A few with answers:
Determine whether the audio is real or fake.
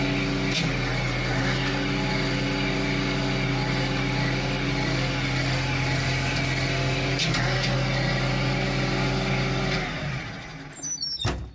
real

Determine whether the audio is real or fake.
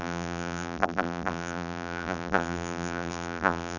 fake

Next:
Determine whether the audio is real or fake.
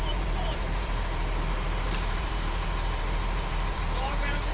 fake